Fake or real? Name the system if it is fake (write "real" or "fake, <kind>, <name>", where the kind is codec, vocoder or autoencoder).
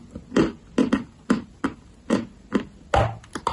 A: real